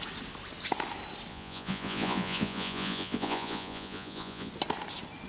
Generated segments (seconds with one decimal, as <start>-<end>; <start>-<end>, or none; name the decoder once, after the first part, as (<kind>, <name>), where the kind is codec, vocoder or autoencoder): 1.3-4.5 (vocoder, Vocos)